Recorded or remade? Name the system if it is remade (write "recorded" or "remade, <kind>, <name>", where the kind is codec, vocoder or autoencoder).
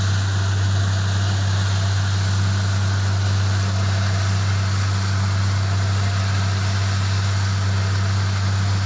recorded